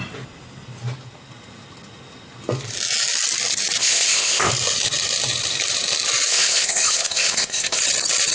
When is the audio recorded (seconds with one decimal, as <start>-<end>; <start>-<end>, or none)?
0.0-3.8; 4.5-6.3; 7.8-8.3